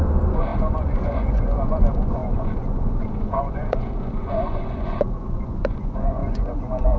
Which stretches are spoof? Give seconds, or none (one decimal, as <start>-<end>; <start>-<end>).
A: 0.0-7.0